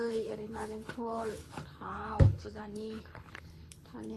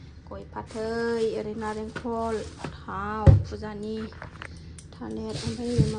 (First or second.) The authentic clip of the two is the second